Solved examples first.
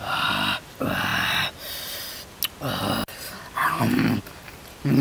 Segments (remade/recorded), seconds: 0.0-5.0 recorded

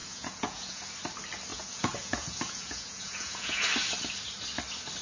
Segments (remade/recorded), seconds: 0.0-0.8 remade; 0.8-1.5 recorded; 1.5-3.6 remade; 3.6-5.0 recorded

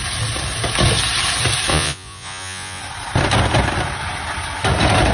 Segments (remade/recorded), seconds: 0.0-1.7 recorded; 1.7-2.8 remade; 2.8-5.1 recorded

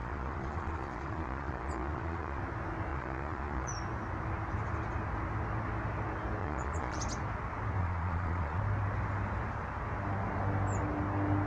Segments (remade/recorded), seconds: 0.0-2.4 remade; 2.4-2.9 recorded; 2.9-3.7 remade; 3.7-6.4 recorded; 6.4-7.0 remade; 7.0-7.8 recorded; 7.8-8.6 remade; 8.6-11.5 recorded

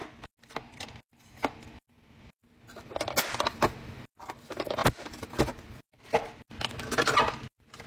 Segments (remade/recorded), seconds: 0.0-7.9 recorded

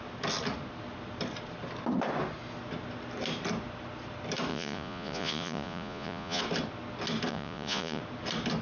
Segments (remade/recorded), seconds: 0.0-4.5 recorded; 4.5-6.4 remade; 6.4-7.3 recorded; 7.3-8.0 remade; 8.0-8.6 recorded

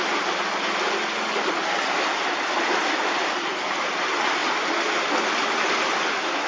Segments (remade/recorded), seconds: 0.0-6.5 recorded